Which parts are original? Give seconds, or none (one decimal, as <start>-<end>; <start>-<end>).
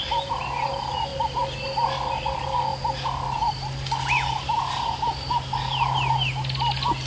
0.0-7.1